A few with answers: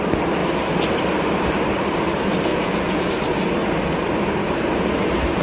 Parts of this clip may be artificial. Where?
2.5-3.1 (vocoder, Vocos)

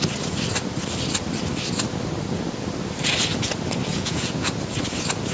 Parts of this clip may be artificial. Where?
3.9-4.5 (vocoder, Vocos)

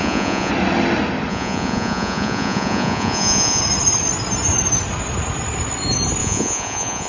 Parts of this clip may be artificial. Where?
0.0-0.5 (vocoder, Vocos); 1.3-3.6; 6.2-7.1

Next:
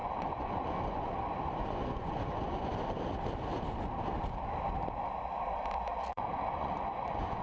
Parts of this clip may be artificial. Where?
0.0-1.1 (vocoder, Vocos); 1.6-2.7; 6.1-7.4

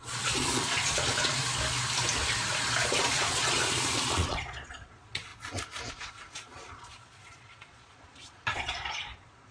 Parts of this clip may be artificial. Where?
0.0-1.4 (vocoder, Vocos); 3.0-5.3; 5.9-9.5

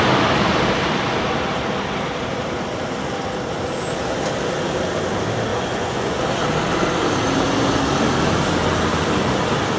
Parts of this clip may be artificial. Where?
5.5-6.2 (vocoder, Vocos)

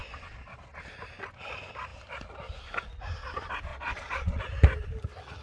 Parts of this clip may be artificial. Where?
0.0-0.8 (vocoder, Vocos); 3.7-4.4